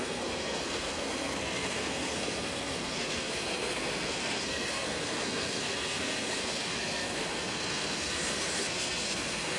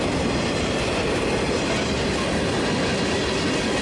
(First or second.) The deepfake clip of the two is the first